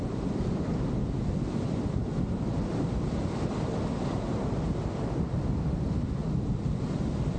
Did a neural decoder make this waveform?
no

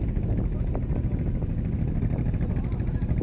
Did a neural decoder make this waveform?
no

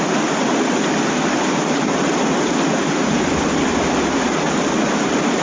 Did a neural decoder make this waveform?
no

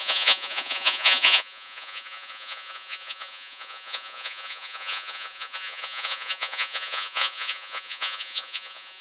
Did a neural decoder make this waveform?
yes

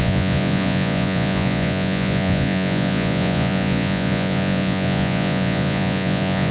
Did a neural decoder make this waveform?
yes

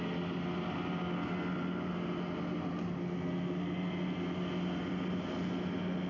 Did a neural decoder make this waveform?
no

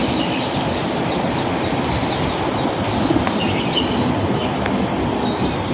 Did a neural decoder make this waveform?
no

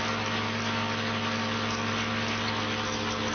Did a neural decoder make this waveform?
no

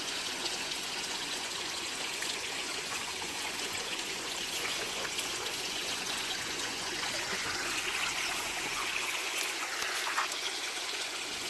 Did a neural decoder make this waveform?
yes